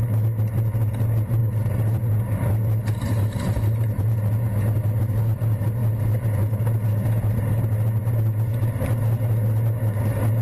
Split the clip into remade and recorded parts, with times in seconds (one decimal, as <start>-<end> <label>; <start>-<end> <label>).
0.0-1.4 recorded; 1.4-2.0 remade; 2.0-2.8 recorded; 2.8-4.3 remade; 4.3-10.4 recorded